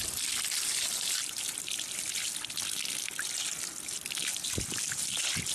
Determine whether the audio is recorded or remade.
recorded